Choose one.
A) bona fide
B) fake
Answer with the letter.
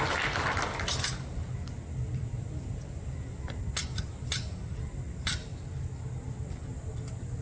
A